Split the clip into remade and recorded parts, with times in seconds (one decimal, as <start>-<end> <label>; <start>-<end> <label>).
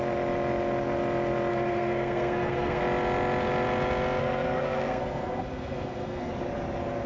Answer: 0.0-1.5 recorded; 1.5-2.8 remade; 2.8-4.2 recorded; 4.2-6.3 remade; 6.3-7.1 recorded